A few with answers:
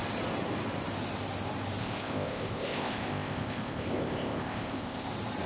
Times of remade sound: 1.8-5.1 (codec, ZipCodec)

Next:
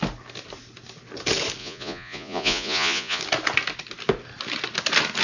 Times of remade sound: 1.6-3.2 (vocoder, Vocos)